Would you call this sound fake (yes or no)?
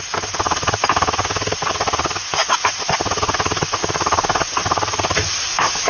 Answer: no